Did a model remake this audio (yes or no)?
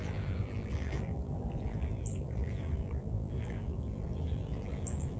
yes